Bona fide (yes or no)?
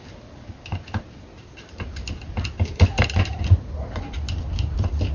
yes